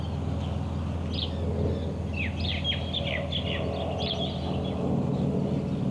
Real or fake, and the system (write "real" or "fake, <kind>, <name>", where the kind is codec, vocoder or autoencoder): real